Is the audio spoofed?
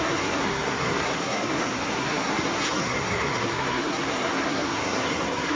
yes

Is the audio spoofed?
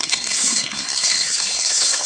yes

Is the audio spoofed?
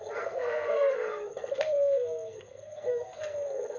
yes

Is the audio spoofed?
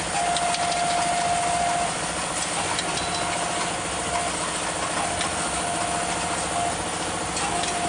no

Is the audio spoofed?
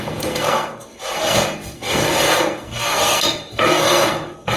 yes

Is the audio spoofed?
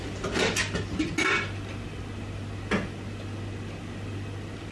no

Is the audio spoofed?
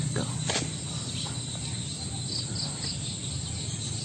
no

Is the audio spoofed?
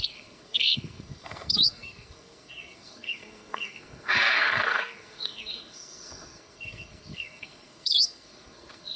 yes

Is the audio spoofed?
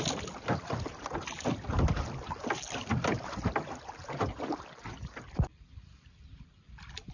no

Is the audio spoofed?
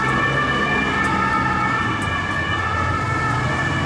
no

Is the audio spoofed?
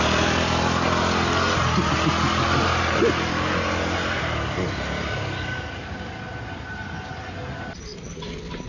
no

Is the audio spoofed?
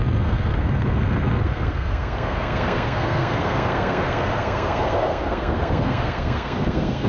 yes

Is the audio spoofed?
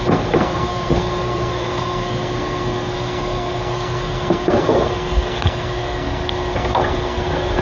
yes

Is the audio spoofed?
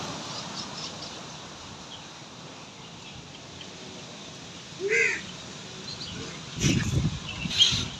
no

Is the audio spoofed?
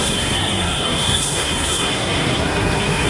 yes